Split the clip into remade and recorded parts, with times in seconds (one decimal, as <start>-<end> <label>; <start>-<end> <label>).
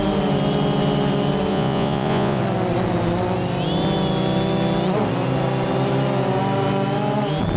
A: 0.0-1.5 recorded; 1.5-2.4 remade; 2.4-7.6 recorded